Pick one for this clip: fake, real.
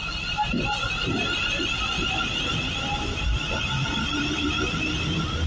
fake